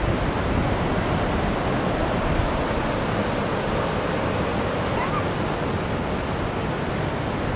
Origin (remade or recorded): recorded